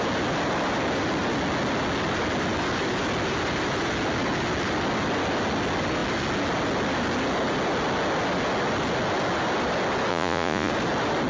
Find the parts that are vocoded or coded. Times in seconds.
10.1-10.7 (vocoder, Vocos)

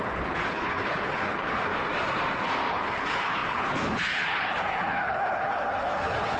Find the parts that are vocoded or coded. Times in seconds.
0.0-1.7 (codec, HILCodec); 2.7-6.4